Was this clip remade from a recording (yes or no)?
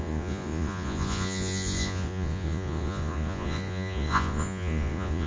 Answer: yes